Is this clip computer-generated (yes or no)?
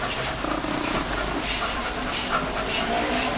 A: no